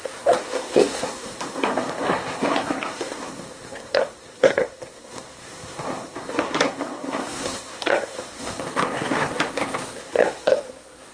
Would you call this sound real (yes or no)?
no